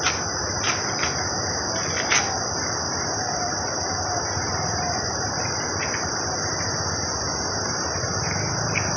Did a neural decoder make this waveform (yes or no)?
no